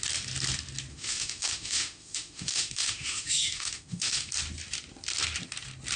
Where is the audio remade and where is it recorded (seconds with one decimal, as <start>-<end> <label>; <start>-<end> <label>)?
0.0-0.9 recorded; 0.9-4.3 remade; 4.3-6.0 recorded